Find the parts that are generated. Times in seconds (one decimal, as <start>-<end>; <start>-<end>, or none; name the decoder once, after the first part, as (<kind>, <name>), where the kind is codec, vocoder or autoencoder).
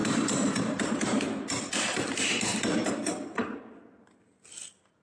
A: 0.0-2.5 (vocoder, BigVGAN v2); 3.1-5.0